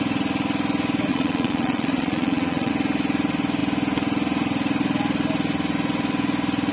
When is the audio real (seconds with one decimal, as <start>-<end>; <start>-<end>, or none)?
0.0-1.1; 2.7-6.7